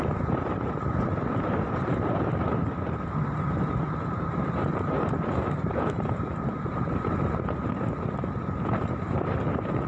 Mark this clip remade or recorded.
remade